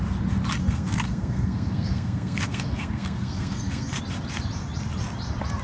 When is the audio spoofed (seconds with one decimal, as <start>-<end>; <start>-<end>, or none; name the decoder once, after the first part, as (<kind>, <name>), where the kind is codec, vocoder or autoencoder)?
0.6-4.0 (codec, SNAC)